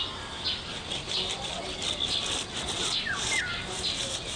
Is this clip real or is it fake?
real